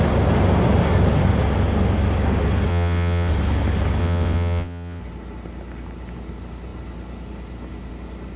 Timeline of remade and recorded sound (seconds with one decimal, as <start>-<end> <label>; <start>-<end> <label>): 0.0-2.7 recorded; 2.7-3.3 remade; 3.3-4.0 recorded; 4.0-5.0 remade; 5.0-8.4 recorded